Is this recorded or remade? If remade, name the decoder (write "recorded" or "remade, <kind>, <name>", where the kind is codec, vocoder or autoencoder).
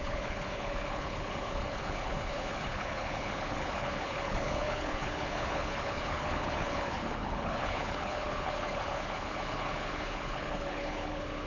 remade, codec, HILCodec